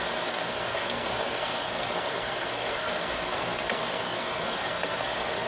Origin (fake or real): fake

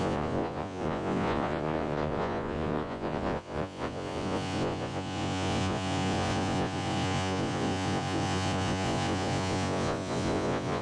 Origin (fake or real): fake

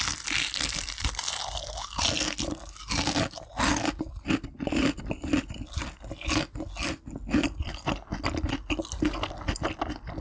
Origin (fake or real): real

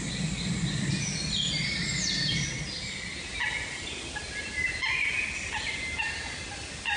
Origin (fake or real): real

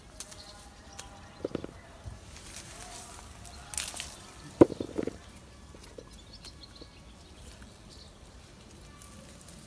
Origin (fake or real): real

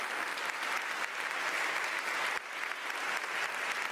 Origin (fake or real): real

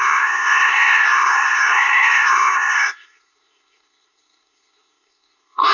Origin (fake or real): fake